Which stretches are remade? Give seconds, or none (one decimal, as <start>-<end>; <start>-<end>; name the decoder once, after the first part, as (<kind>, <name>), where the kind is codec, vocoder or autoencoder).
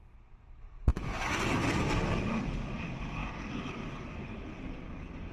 none